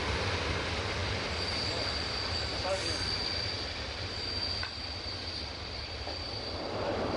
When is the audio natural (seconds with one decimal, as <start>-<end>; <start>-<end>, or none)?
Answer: 0.0-7.2

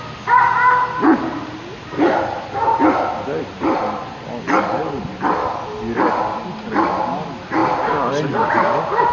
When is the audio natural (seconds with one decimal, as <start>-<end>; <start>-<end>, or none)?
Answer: 0.0-1.3; 4.0-9.1

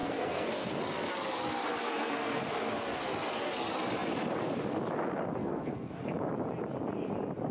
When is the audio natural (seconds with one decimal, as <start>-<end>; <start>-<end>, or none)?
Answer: 0.8-1.8; 2.4-5.4; 5.9-7.5

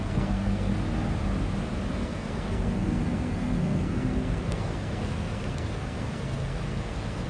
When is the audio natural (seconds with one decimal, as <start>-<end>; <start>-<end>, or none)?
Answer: 0.7-1.9

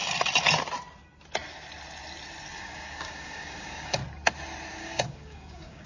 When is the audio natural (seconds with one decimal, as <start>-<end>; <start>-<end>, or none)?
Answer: 0.0-2.5; 4.0-4.8

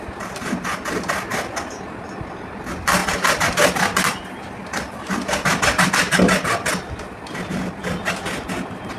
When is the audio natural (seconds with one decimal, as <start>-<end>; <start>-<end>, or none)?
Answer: 0.0-9.0

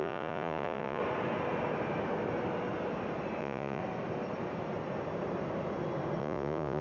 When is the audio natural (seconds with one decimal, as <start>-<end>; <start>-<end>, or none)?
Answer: 1.0-3.4; 3.8-6.2

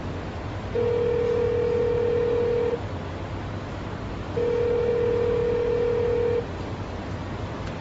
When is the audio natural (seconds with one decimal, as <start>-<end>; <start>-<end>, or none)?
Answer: 0.0-7.8